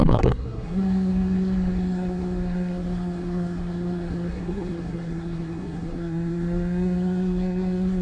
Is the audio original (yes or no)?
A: no